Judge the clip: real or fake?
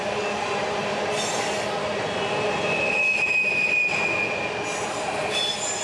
real